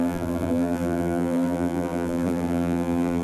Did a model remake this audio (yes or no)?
yes